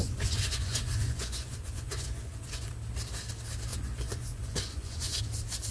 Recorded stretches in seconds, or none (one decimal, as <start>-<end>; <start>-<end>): 2.7-3.7; 5.2-5.7